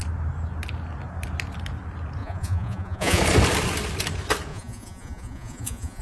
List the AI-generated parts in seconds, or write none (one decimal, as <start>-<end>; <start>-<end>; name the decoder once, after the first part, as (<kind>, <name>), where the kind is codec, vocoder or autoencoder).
2.2-3.2 (vocoder, Vocos); 4.5-6.0